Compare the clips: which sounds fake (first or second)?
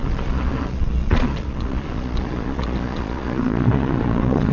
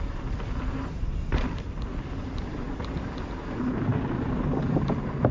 first